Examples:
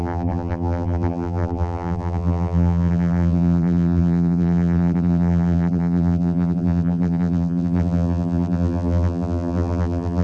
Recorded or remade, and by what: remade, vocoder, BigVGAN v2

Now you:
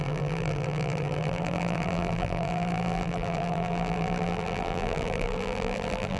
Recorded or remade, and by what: remade, vocoder, BigVGAN v2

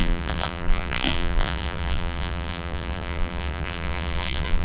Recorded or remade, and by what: remade, vocoder, BigVGAN v2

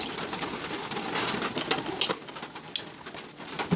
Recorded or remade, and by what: recorded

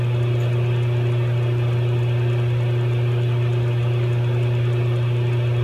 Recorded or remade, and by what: recorded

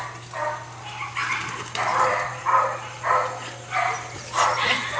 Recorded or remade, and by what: recorded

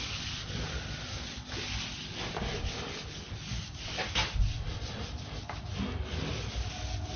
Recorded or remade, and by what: recorded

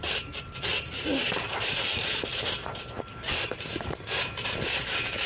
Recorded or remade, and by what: remade, vocoder, BigVGAN v2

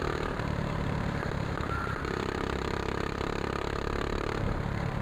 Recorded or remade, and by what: remade, vocoder, BigVGAN v2